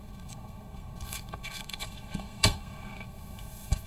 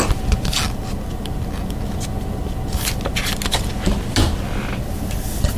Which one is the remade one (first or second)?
first